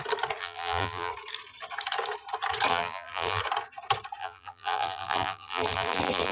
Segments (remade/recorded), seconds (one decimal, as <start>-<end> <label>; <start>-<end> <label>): 0.0-0.4 recorded; 0.4-1.1 remade; 1.1-2.7 recorded; 2.7-3.4 remade; 3.4-4.2 recorded; 4.2-6.3 remade